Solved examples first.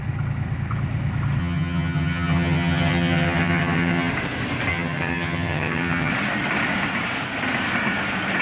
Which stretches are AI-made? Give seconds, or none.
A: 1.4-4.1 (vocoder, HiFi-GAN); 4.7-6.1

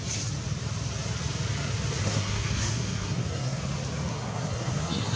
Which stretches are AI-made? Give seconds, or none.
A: 2.0-3.6 (codec, SNAC); 4.1-5.2

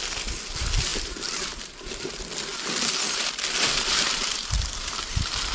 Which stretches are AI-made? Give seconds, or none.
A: 0.9-2.1 (vocoder, BigVGAN v2)

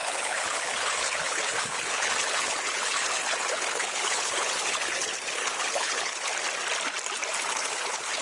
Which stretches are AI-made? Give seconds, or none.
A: 0.0-6.3 (codec, HILCodec); 7.5-8.2